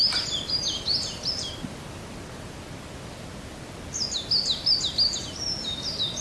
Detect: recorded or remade recorded